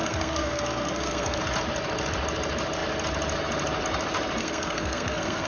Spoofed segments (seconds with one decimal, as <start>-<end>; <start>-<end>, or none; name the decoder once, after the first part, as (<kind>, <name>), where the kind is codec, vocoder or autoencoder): 0.0-1.4 (codec, SNAC); 4.4-5.5

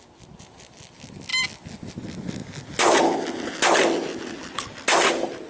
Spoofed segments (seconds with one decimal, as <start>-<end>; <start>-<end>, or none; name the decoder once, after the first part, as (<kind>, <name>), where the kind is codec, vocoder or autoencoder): none